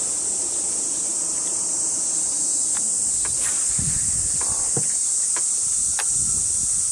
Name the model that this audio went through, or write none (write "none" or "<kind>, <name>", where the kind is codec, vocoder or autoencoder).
none